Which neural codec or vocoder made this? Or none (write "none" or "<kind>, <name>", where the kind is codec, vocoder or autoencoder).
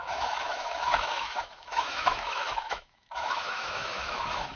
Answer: autoencoder, DAC-VAE